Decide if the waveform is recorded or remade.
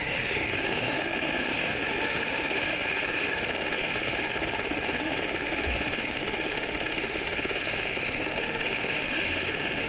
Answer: remade